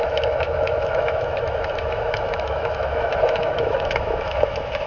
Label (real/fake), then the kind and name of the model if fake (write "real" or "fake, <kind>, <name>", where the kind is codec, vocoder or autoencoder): fake, autoencoder, DAC-VAE